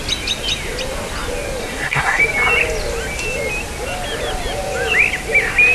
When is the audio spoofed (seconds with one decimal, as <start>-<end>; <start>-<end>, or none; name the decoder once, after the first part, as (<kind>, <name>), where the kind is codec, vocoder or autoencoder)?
1.6-2.2 (codec, SNAC)